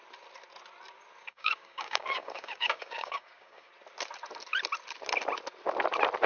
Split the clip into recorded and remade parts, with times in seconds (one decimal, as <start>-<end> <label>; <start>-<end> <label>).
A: 0.0-1.2 recorded; 1.2-3.7 remade; 3.7-6.3 recorded